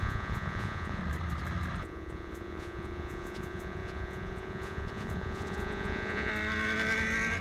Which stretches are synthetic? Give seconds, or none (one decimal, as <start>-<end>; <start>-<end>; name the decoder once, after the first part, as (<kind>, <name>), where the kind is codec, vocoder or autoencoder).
0.0-1.0 (vocoder, Vocos); 1.8-6.3